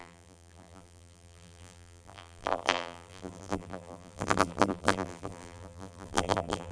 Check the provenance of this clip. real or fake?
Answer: fake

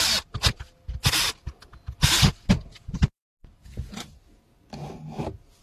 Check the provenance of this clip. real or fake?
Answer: real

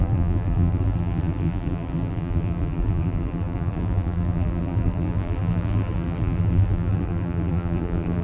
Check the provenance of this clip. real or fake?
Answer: fake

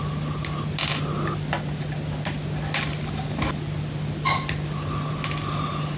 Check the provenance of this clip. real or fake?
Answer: real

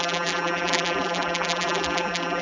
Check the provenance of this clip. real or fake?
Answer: fake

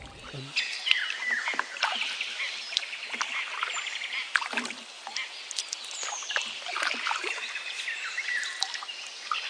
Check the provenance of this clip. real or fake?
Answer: real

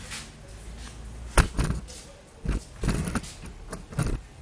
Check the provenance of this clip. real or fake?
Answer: real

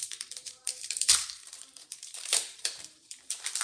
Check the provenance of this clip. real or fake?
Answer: fake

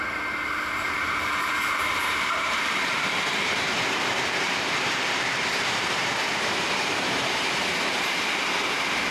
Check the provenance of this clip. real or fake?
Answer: fake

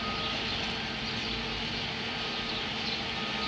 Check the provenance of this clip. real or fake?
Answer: real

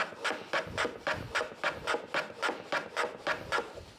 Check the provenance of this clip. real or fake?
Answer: real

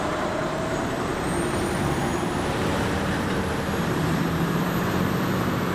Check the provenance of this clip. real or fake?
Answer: fake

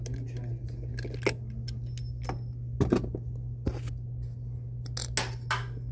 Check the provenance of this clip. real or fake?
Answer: real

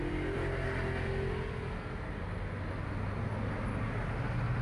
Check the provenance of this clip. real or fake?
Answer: real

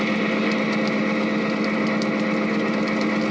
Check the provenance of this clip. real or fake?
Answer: real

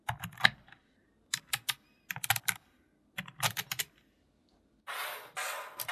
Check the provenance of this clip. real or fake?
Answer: real